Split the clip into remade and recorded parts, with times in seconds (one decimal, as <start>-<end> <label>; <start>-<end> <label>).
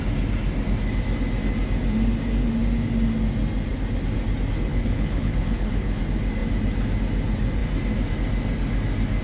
0.0-4.7 recorded; 4.7-6.0 remade; 6.0-9.2 recorded